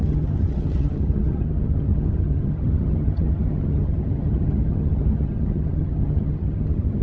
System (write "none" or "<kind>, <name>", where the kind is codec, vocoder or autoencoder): vocoder, HiFi-GAN